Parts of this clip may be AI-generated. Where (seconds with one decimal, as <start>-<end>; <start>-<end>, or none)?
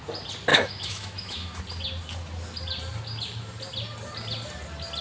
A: 0.5-1.6